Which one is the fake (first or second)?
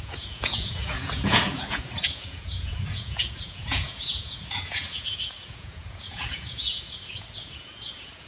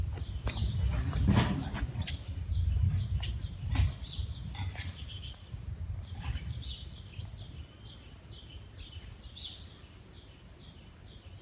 first